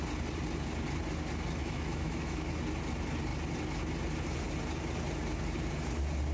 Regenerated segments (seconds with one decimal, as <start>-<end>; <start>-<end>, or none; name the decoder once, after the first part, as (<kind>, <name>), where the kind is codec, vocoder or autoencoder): 1.6-2.5 (autoencoder, DAC-VAE)

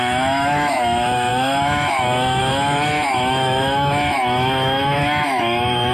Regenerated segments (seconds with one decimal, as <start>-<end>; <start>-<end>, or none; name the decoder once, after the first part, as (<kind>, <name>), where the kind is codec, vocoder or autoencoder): 0.0-5.9 (autoencoder, DAC-VAE)